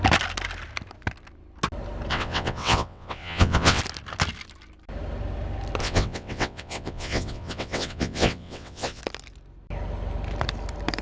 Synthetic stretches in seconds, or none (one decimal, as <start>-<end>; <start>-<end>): 2.1-3.8; 5.8-9.0